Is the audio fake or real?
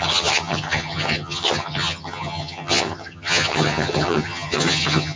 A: fake